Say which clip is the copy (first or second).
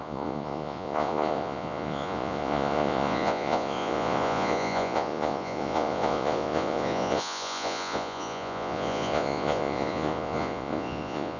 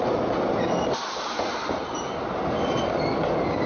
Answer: first